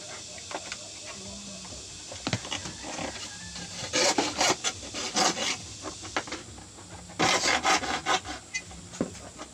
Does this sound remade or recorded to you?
recorded